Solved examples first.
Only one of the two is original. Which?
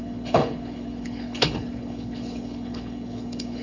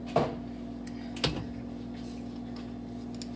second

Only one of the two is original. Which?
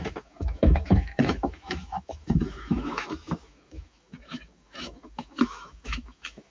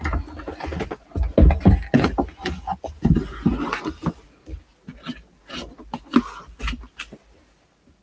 second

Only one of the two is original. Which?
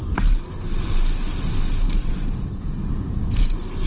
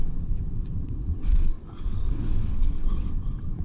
first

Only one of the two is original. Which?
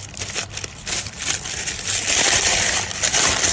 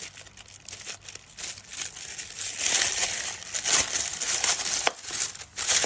second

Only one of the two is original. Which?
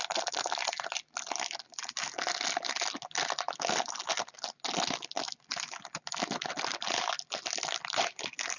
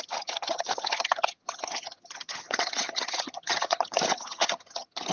first